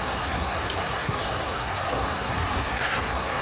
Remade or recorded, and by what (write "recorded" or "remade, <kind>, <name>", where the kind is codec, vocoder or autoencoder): remade, codec, SNAC